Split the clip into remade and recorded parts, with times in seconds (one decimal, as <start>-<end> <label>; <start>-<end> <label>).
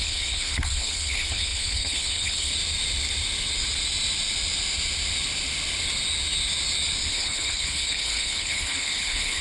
0.0-2.5 remade; 2.5-7.1 recorded; 7.1-9.4 remade